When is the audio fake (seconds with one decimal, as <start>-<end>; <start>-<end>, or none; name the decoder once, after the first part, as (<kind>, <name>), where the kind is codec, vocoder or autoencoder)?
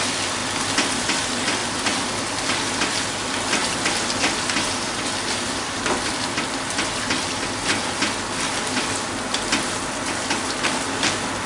none